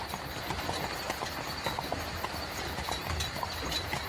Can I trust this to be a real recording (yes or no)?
yes